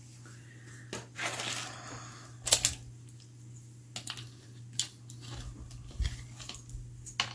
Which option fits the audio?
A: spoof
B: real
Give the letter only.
B